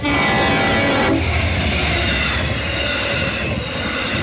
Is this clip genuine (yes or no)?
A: yes